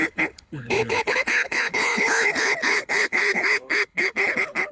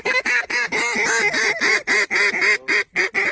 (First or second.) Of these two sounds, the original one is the second